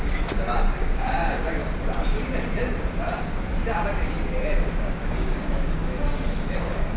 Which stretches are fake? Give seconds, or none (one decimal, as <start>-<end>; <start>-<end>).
0.0-1.6; 4.8-5.9; 6.6-7.0